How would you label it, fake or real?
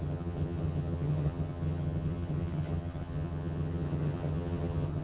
fake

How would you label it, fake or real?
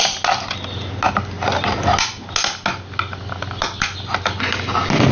real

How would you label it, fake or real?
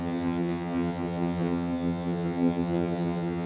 fake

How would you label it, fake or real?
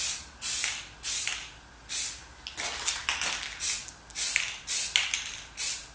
real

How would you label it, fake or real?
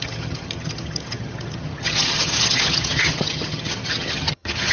fake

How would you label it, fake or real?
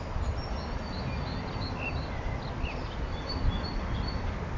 real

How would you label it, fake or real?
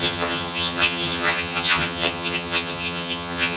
fake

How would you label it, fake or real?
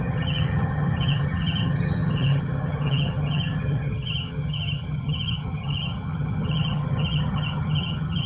fake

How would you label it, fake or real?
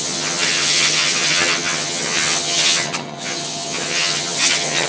fake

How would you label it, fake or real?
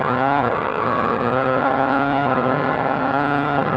fake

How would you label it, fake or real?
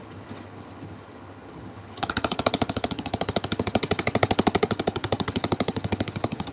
fake